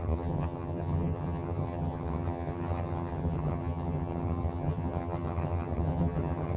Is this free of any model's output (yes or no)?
no